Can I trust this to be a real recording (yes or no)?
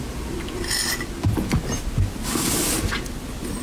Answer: yes